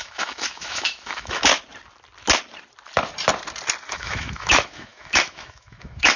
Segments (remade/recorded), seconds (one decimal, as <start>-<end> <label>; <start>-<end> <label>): 0.0-1.5 remade; 1.5-3.9 recorded; 3.9-6.2 remade